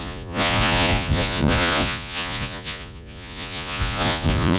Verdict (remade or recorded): remade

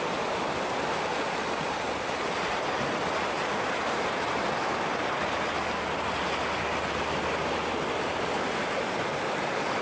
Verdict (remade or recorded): recorded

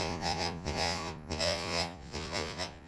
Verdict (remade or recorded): remade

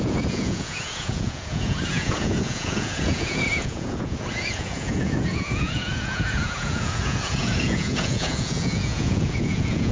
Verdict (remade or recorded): remade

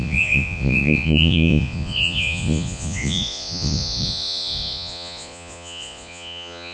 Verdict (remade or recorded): remade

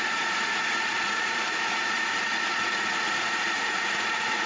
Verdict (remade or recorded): remade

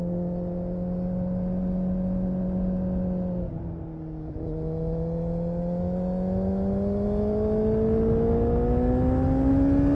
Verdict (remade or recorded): recorded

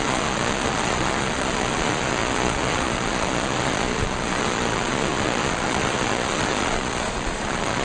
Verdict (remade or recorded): remade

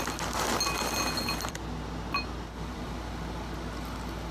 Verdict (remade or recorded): recorded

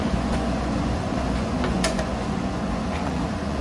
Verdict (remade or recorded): remade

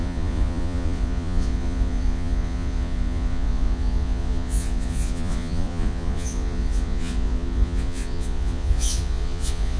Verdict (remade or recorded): remade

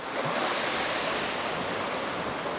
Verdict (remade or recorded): recorded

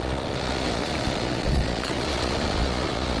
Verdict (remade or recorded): remade